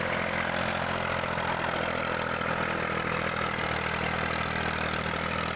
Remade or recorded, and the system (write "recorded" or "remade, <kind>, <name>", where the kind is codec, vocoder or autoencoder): recorded